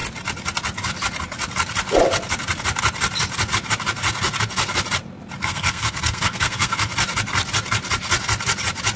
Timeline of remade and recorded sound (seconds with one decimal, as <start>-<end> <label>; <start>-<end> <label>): 0.0-5.4 recorded; 5.4-6.9 remade; 6.9-9.0 recorded